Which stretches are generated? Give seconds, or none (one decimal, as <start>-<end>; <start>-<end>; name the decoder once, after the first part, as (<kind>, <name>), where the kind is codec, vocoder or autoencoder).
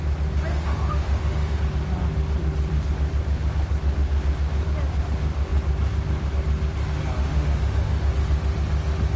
0.5-1.6 (autoencoder, DAC-VAE); 7.2-8.1